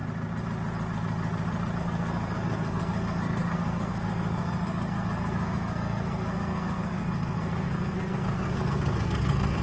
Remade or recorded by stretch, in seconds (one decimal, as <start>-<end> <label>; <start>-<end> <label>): 0.0-1.8 recorded; 1.8-9.6 remade